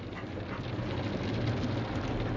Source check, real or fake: real